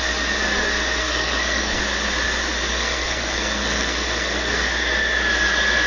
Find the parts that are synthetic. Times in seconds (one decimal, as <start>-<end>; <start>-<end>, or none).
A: 1.0-1.8; 2.7-4.7